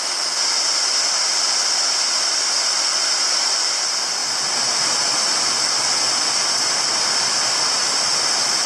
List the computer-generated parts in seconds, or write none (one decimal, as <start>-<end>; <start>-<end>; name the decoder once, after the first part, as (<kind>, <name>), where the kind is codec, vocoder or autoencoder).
none